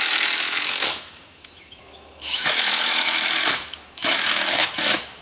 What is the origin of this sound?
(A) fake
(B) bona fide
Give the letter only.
A